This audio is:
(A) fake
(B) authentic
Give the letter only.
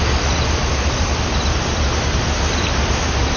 B